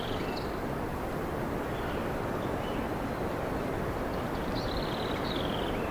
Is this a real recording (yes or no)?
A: yes